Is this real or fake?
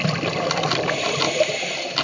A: real